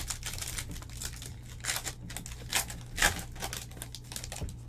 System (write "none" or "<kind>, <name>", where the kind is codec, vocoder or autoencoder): none